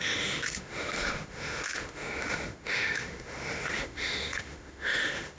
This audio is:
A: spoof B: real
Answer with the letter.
A